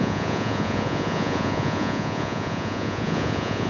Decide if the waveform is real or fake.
fake